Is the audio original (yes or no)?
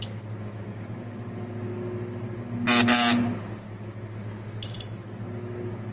yes